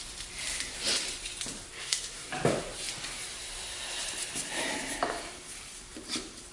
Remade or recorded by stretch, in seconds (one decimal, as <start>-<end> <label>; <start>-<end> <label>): 0.0-1.7 recorded; 1.7-2.3 remade; 2.3-6.5 recorded